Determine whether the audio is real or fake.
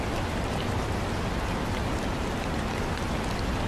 real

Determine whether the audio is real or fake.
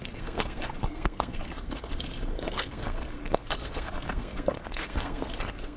fake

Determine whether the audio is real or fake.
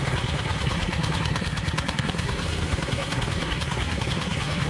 fake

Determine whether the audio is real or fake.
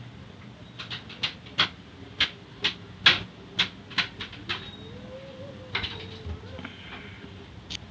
real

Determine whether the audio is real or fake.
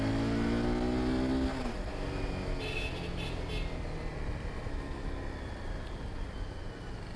real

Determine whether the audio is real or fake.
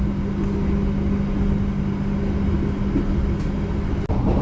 real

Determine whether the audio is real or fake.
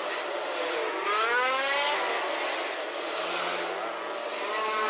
real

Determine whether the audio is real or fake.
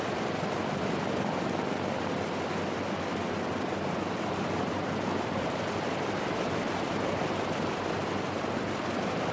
real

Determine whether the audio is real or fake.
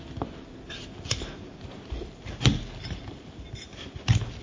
real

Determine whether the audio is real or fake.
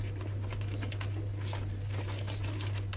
real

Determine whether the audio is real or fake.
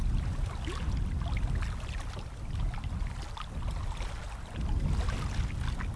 real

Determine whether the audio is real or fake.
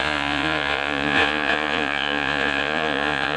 fake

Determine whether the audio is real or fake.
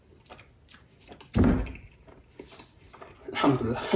real